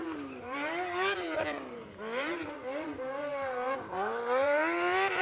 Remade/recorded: remade